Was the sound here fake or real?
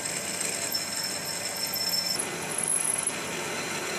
real